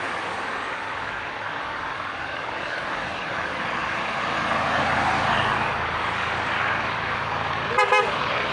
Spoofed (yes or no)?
yes